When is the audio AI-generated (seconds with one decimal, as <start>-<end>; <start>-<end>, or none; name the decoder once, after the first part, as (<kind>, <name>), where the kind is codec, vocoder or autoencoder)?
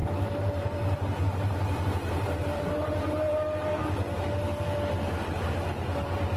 0.0-3.8 (vocoder, BigVGAN v2); 5.1-6.4